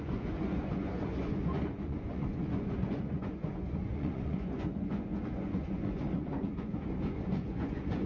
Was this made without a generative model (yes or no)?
no